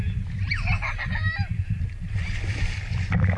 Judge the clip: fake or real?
real